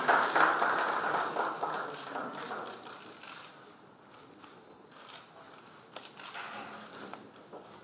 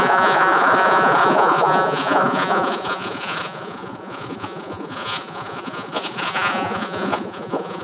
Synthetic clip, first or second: second